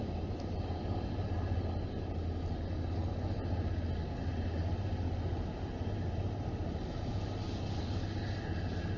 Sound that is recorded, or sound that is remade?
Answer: recorded